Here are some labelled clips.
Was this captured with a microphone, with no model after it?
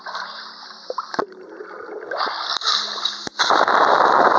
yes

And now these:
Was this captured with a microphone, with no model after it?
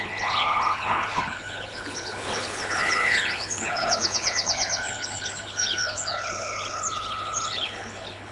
no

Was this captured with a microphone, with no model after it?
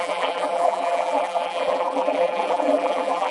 no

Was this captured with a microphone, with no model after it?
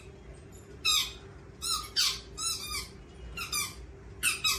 yes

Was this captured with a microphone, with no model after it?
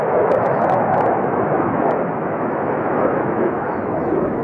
no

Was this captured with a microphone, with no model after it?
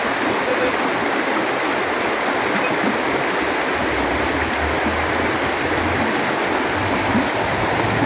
yes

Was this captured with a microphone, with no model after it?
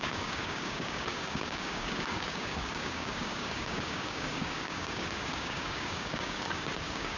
no